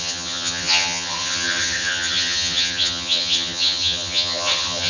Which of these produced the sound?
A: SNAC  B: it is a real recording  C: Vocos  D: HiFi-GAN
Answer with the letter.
D